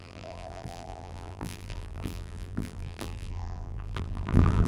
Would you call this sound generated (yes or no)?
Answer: yes